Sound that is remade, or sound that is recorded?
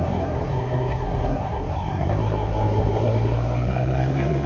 remade